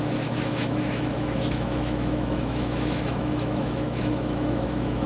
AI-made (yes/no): yes